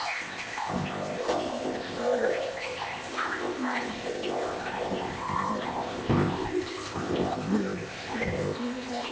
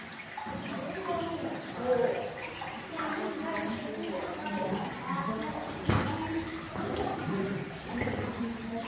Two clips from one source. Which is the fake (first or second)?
first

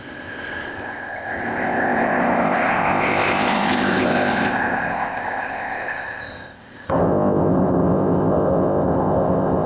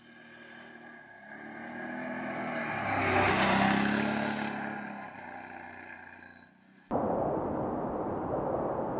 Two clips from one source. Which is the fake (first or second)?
first